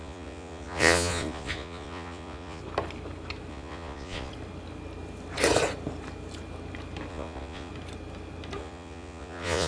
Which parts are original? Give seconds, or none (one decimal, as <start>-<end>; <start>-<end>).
2.6-3.5; 4.3-7.1; 7.7-8.6

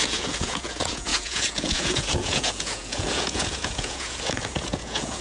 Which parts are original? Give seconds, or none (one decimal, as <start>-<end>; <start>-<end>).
none

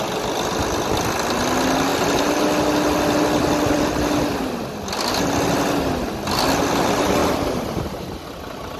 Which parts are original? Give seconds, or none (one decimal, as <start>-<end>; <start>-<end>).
0.0-8.8

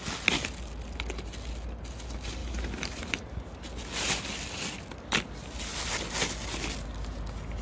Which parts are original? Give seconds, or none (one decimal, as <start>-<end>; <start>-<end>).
0.0-2.4; 3.0-7.6

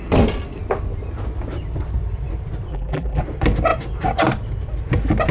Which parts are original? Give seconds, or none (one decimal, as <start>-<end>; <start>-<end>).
0.0-2.7; 3.2-5.3

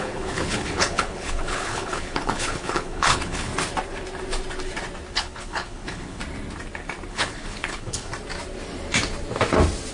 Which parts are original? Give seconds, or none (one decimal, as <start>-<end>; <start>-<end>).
3.5-5.1; 6.2-7.1; 8.1-9.9

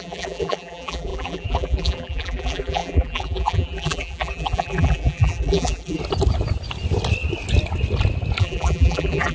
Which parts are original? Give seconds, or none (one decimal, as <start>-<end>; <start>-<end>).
6.0-8.4

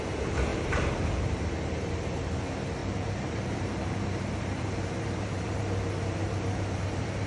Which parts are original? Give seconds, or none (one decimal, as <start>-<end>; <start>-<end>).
0.0-0.5; 1.4-2.8